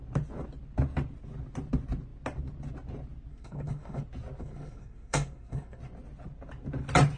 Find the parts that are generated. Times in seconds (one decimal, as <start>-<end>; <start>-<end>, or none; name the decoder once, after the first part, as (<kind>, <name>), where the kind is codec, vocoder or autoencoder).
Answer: 3.3-4.0 (codec, SNAC); 4.4-5.8